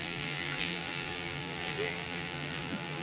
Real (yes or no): no